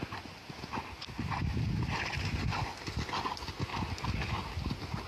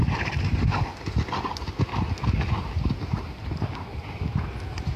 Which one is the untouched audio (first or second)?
first